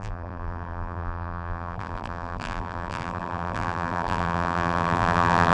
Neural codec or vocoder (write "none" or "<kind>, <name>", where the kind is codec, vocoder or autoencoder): vocoder, BigVGAN v2